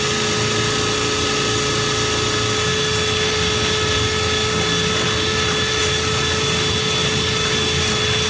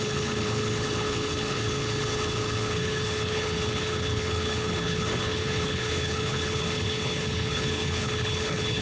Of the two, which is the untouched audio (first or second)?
first